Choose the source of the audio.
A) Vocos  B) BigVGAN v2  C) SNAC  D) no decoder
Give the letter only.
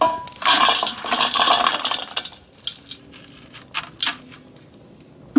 D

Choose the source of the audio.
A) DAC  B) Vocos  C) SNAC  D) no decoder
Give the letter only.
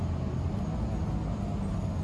D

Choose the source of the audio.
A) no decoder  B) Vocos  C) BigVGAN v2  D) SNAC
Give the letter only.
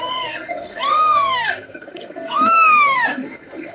D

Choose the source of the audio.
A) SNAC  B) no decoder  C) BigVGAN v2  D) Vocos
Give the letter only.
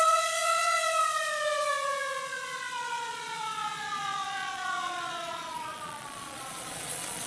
D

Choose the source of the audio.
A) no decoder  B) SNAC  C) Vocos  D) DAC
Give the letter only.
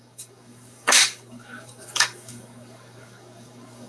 D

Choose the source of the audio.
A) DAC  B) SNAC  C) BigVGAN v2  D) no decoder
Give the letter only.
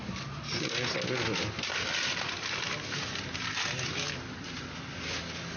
D